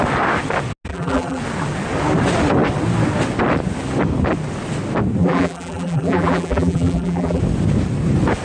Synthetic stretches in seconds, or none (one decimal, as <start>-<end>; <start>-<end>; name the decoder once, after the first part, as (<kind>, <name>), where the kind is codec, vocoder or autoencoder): 0.9-1.4 (vocoder, BigVGAN v2); 5.2-7.4